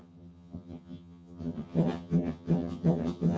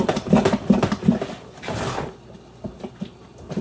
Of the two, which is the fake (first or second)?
first